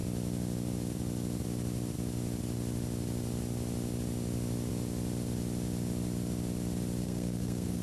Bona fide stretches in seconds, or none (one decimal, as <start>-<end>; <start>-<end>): 0.0-7.0